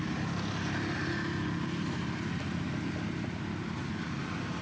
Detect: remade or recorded recorded